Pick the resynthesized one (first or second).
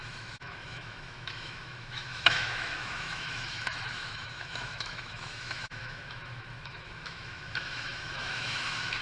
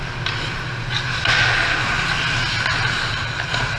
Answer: first